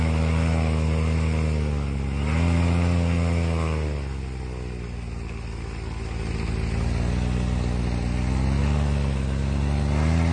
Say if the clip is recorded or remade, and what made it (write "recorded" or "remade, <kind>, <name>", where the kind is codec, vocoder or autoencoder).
recorded